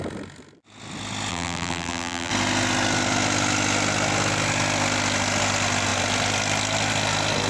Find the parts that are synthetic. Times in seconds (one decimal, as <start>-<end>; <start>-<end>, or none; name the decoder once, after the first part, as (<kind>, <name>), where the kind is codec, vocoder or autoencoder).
1.3-2.3 (vocoder, BigVGAN v2)